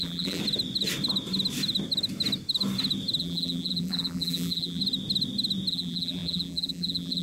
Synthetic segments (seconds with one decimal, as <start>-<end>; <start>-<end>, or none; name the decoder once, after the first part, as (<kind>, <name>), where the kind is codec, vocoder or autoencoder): 0.0-0.4 (vocoder, BigVGAN v2); 3.2-4.8; 5.7-7.2